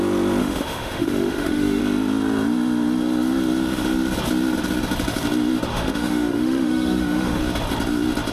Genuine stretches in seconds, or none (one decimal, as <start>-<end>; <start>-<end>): 0.0-0.4; 1.8-5.7; 7.4-8.3

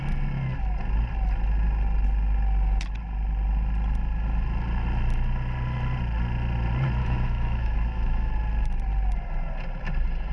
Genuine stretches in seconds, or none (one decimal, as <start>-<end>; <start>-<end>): 0.0-7.0; 8.3-10.3

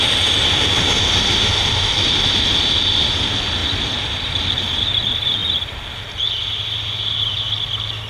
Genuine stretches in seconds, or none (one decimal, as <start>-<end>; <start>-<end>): 0.0-8.1

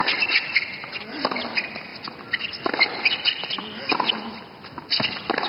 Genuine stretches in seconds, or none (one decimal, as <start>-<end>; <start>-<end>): 0.0-5.5

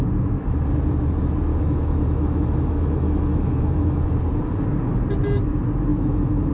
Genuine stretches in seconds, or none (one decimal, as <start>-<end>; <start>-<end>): 0.0-1.5; 4.0-5.9